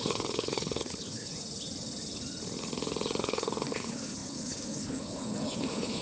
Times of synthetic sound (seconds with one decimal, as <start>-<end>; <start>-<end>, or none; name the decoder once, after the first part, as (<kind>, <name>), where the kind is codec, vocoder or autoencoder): 0.0-1.3 (codec, HILCodec); 3.2-6.0